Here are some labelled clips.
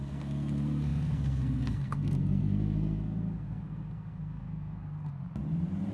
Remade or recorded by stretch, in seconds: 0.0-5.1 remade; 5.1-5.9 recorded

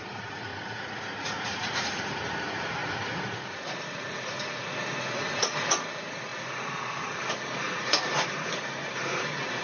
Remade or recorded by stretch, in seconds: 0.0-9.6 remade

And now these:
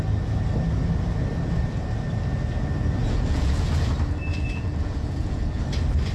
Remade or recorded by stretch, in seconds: 0.0-3.0 recorded; 3.0-3.9 remade; 3.9-4.3 recorded; 4.3-5.6 remade; 5.6-6.1 recorded

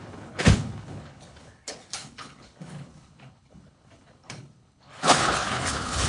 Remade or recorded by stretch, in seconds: 0.0-6.1 remade

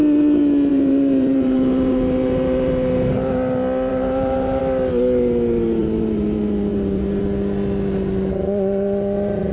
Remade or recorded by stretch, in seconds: 0.0-0.7 recorded; 0.7-2.7 remade; 2.7-3.9 recorded; 3.9-4.6 remade; 4.6-5.8 recorded; 5.8-7.2 remade; 7.2-9.5 recorded

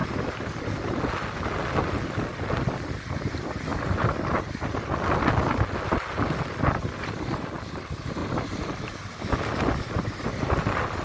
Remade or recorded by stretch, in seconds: 0.0-11.0 recorded

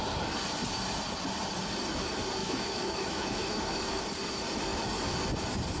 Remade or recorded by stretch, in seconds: 0.0-2.4 recorded; 2.4-4.0 remade; 4.0-5.8 recorded

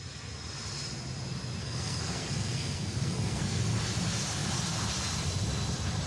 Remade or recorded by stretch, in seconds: 0.0-1.6 recorded; 1.6-3.6 remade; 3.6-6.1 recorded